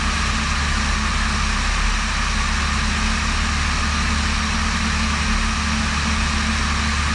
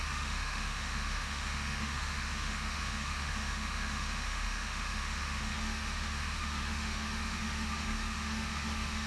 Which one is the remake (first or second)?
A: second